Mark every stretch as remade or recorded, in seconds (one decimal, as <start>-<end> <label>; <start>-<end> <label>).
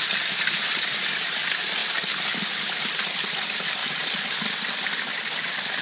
0.0-1.8 remade; 1.8-2.8 recorded; 2.8-3.8 remade; 3.8-4.4 recorded; 4.4-5.8 remade